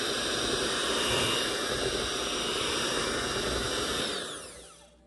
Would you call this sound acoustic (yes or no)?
yes